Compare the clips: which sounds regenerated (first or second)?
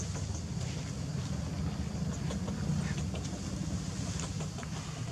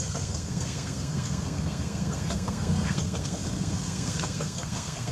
second